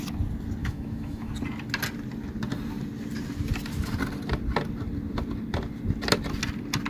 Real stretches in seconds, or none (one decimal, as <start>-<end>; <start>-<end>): 0.0-0.6; 1.3-6.9